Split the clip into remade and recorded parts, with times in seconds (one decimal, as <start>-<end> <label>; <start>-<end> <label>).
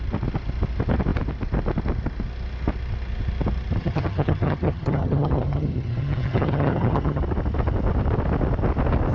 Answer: 0.0-3.8 recorded; 3.8-7.2 remade; 7.2-9.1 recorded